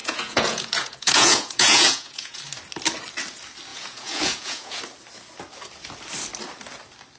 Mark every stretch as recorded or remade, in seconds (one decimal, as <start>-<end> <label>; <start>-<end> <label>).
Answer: 0.0-2.4 remade; 2.4-3.7 recorded; 3.7-4.8 remade; 4.8-7.2 recorded